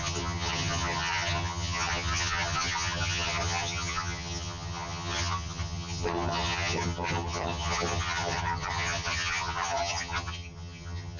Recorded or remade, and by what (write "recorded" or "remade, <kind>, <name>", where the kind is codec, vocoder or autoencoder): remade, vocoder, HiFi-GAN